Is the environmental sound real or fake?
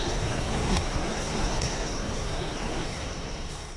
fake